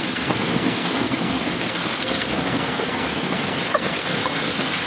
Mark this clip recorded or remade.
remade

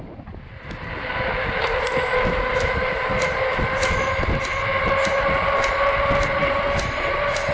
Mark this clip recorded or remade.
recorded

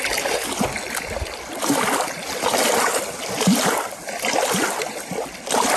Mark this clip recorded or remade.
remade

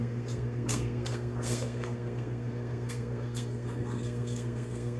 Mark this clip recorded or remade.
remade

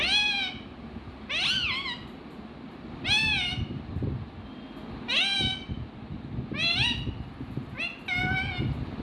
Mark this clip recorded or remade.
recorded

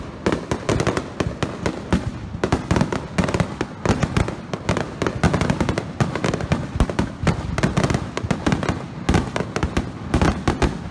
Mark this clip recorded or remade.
recorded